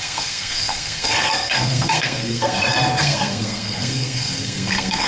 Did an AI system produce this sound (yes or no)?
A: yes